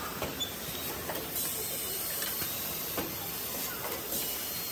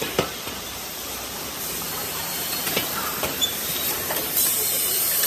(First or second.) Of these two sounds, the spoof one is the second